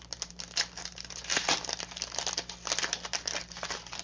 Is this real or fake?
real